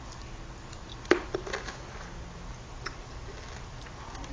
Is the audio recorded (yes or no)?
yes